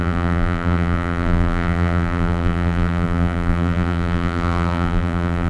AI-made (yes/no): yes